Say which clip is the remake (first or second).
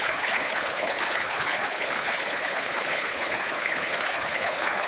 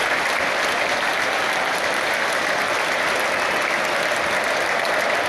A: first